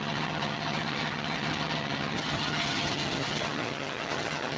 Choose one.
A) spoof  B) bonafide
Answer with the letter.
A